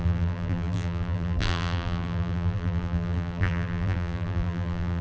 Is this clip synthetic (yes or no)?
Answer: yes